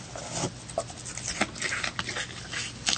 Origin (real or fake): real